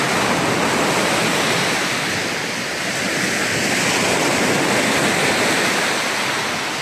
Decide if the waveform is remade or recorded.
recorded